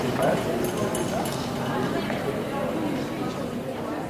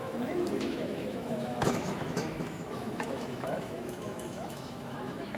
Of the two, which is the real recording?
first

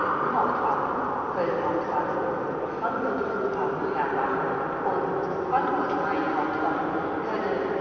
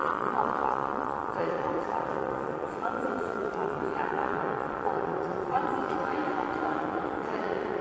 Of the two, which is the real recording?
first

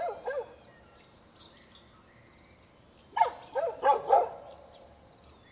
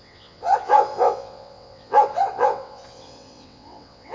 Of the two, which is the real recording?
first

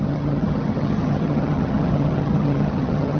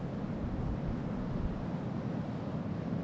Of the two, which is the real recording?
second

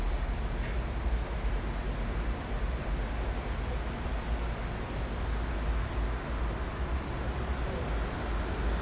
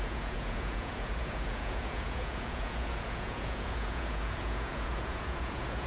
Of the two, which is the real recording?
first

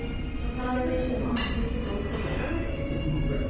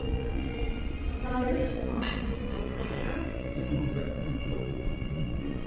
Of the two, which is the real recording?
first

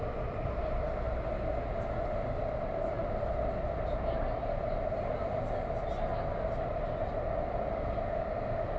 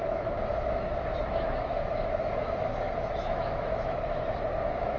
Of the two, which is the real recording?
first